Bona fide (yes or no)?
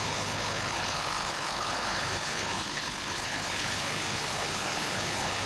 no